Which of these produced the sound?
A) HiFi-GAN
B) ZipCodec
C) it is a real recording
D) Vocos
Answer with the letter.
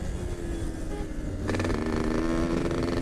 C